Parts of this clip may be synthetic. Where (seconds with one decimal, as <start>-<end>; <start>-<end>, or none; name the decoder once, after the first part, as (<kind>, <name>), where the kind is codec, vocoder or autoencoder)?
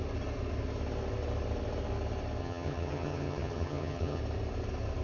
2.4-4.2 (vocoder, HiFi-GAN)